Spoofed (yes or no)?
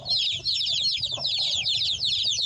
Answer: no